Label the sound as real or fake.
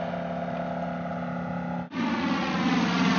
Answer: real